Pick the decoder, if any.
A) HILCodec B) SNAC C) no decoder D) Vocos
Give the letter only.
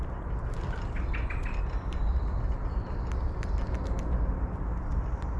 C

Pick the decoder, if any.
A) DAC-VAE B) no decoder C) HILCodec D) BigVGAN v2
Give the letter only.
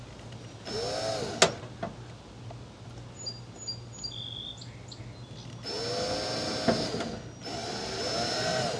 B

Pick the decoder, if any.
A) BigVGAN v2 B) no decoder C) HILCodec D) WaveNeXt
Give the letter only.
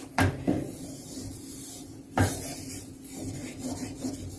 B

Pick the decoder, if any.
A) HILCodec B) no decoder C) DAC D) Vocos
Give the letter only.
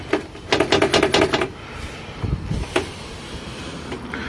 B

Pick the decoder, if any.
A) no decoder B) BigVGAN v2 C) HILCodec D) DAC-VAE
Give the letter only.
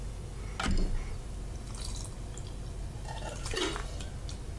A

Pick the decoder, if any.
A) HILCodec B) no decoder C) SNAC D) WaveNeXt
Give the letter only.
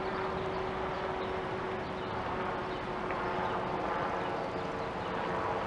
B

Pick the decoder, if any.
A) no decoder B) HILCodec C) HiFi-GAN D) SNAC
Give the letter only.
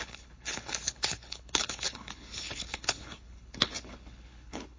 B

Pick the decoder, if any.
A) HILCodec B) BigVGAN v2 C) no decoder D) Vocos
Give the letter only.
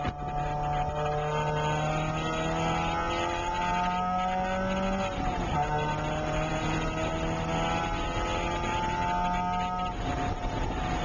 C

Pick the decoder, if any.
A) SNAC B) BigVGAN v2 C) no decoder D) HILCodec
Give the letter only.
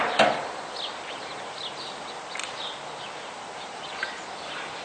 C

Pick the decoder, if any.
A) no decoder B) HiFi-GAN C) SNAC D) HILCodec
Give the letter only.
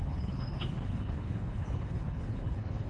D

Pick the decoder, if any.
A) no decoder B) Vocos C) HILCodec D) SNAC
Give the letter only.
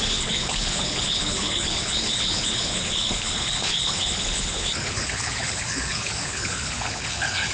C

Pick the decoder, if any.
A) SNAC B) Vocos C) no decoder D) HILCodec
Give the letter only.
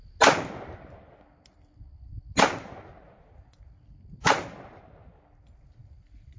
C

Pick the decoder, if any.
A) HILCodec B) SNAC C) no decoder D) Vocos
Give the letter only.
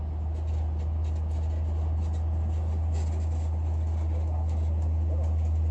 C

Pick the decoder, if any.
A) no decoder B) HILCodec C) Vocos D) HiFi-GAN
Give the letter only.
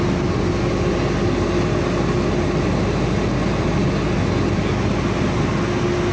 A